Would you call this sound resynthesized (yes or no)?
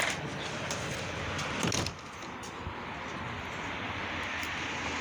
no